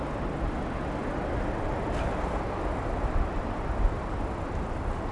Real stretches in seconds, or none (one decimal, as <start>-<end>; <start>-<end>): 0.0-5.1